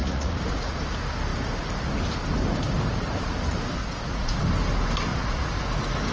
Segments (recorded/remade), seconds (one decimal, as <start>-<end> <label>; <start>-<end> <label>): 0.0-0.8 remade; 0.8-3.8 recorded; 3.8-4.4 remade; 4.4-5.1 recorded; 5.1-5.6 remade; 5.6-6.1 recorded